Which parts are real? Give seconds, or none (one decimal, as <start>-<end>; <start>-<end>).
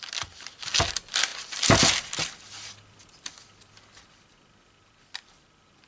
0.0-5.9